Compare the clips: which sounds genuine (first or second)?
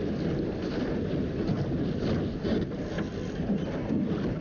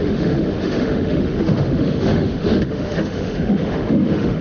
first